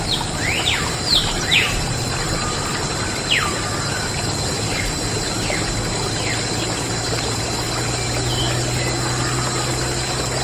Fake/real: real